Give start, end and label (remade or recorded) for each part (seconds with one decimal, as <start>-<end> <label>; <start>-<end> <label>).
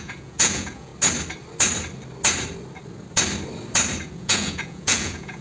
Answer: 0.0-0.9 remade; 0.9-4.1 recorded; 4.1-5.4 remade